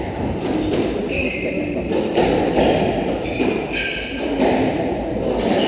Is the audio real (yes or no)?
yes